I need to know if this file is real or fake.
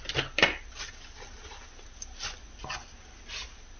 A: real